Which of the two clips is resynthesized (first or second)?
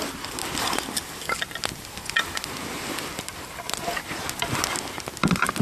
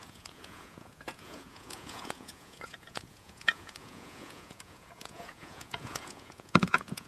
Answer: second